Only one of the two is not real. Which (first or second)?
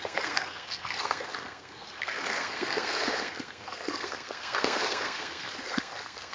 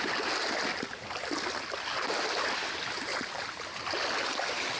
first